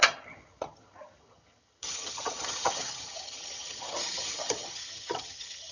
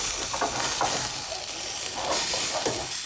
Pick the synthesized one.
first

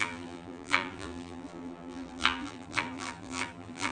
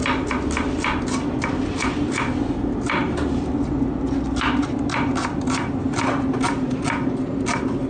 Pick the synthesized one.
first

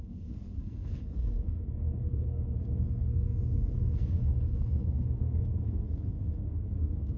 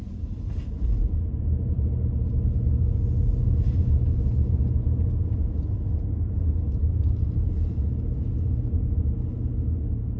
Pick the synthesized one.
first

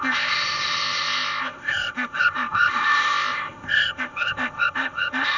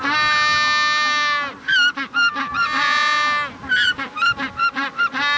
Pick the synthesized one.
first